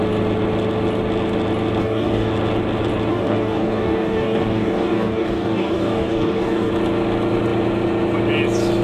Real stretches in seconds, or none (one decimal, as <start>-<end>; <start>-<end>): 0.0-1.8; 2.3-3.1; 6.7-8.8